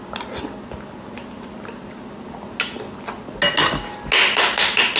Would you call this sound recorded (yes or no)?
yes